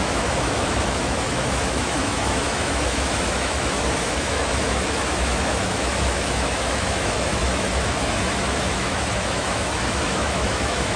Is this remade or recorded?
remade